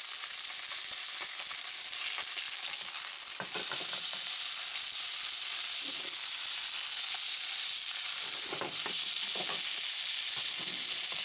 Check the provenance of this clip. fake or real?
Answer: real